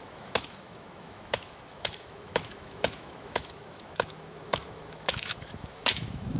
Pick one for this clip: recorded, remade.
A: remade